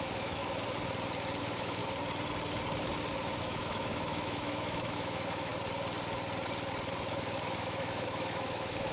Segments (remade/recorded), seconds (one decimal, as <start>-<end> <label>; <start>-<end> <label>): 0.0-0.4 remade; 0.4-1.4 recorded; 1.4-1.8 remade; 1.8-3.4 recorded; 3.4-5.5 remade; 5.5-7.1 recorded; 7.1-8.9 remade